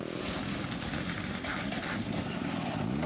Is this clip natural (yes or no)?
yes